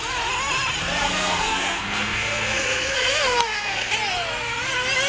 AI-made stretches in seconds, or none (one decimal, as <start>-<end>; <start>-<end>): 0.8-3.9